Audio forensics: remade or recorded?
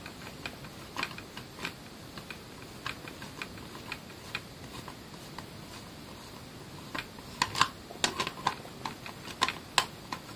recorded